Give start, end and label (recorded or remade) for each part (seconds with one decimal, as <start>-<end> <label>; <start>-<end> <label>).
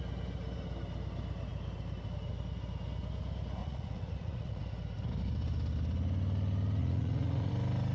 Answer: 0.0-3.6 recorded; 3.6-4.6 remade; 4.6-6.8 recorded; 6.8-7.5 remade; 7.5-7.9 recorded